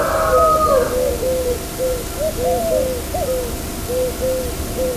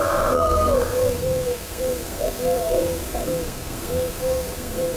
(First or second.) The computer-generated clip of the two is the second